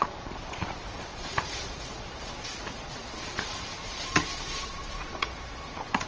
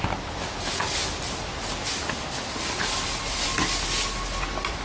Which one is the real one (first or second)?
second